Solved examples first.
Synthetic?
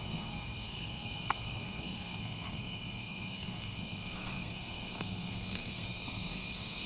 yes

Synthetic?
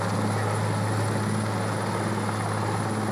no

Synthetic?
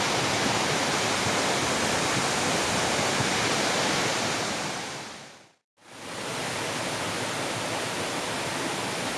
no